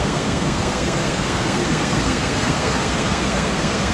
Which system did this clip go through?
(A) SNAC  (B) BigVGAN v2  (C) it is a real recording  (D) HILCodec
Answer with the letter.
A